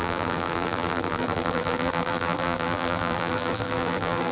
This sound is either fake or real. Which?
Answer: fake